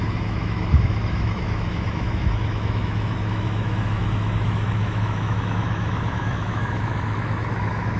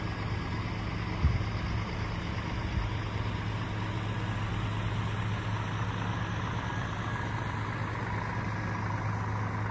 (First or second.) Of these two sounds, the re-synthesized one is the first